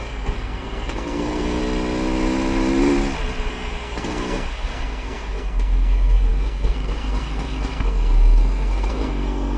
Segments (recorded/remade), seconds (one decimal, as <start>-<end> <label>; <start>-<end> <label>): 0.0-1.6 remade; 1.6-3.5 recorded; 3.5-9.6 remade